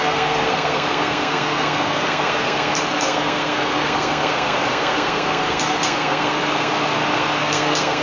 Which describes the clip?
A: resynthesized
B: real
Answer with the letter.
A